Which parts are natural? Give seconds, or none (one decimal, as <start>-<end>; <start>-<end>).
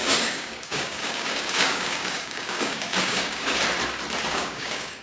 3.6-4.3